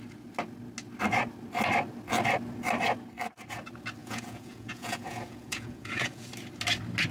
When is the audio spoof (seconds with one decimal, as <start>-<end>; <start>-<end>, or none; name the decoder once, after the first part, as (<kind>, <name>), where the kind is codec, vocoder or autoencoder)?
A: 4.0-6.3 (vocoder, Vocos)